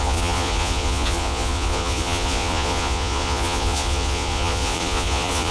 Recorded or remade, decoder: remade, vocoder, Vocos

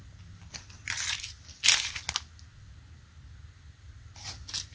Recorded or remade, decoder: recorded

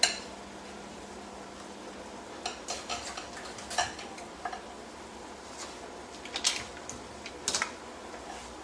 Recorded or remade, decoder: recorded